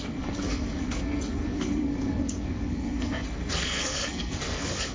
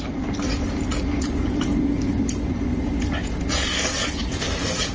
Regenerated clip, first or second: first